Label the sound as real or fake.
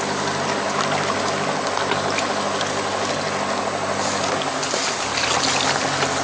real